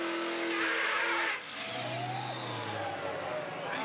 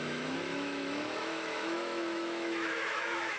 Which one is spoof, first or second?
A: second